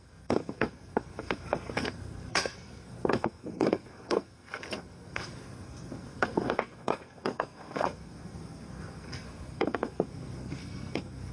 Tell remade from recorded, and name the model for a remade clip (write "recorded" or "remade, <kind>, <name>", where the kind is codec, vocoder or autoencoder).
remade, codec, SNAC